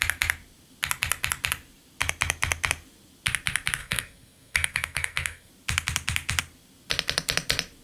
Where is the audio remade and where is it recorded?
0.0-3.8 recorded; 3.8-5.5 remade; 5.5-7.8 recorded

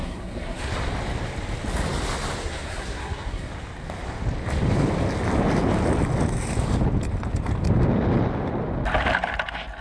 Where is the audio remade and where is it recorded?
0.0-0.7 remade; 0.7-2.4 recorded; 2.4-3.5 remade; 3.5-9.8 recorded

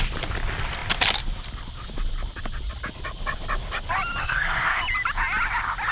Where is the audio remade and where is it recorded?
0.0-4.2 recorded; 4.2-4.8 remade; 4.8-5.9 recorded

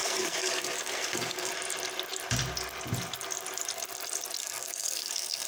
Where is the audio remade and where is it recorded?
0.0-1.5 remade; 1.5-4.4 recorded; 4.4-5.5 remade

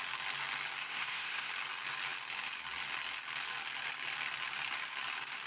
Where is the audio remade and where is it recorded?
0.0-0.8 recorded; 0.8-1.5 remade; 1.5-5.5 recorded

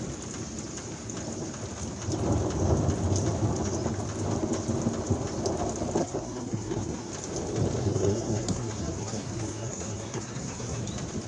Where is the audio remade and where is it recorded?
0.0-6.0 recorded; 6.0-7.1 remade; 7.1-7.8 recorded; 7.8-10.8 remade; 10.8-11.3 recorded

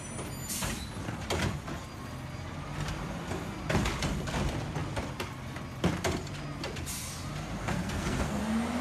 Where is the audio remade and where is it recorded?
0.0-7.6 recorded; 7.6-8.4 remade; 8.4-8.8 recorded

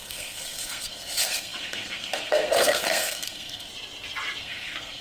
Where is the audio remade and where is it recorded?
0.0-3.7 remade; 3.7-4.4 recorded; 4.4-5.0 remade